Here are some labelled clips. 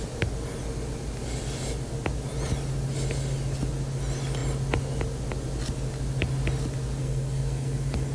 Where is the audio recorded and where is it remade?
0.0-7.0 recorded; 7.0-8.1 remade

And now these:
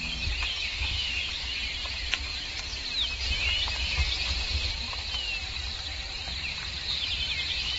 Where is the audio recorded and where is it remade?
0.0-0.7 recorded; 0.7-1.2 remade; 1.2-7.8 recorded

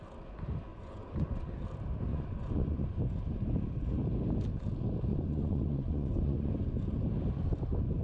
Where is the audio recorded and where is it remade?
0.0-0.7 recorded; 0.7-1.5 remade; 1.5-2.1 recorded; 2.1-3.0 remade; 3.0-5.1 recorded; 5.1-6.5 remade; 6.5-8.0 recorded

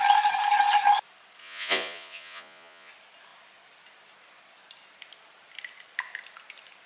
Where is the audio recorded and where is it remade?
0.0-1.4 recorded; 1.4-2.9 remade; 2.9-6.9 recorded

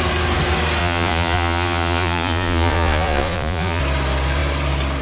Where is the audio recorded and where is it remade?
0.0-0.8 recorded; 0.8-3.8 remade; 3.8-5.0 recorded

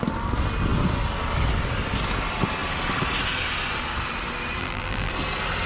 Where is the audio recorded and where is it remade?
0.0-4.6 recorded; 4.6-5.1 remade; 5.1-5.7 recorded

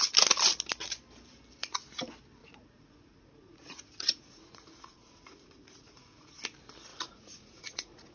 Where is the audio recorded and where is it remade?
0.0-2.4 recorded; 2.4-6.4 remade; 6.4-6.9 recorded; 6.9-8.1 remade

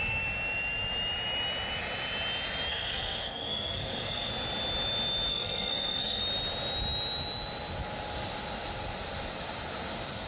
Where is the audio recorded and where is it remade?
0.0-2.7 recorded; 2.7-4.3 remade; 4.3-5.3 recorded; 5.3-6.2 remade; 6.2-10.3 recorded